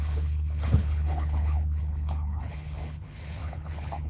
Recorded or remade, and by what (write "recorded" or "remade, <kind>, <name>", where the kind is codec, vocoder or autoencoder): remade, codec, HILCodec